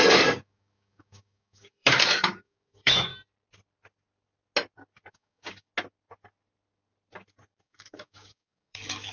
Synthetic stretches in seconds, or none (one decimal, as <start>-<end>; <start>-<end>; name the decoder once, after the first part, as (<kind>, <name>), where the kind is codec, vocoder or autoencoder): 0.0-3.1 (codec, DAC); 5.1-5.7; 7.6-9.1